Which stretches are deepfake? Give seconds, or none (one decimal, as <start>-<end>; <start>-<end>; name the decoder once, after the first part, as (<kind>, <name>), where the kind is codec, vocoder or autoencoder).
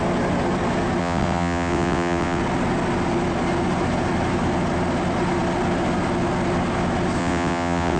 1.0-2.4 (vocoder, WaveNeXt); 7.2-8.0